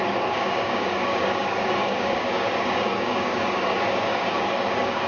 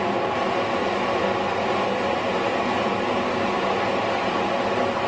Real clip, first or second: second